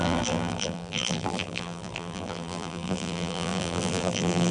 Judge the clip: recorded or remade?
remade